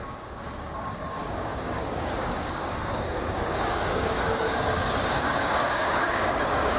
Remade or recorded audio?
remade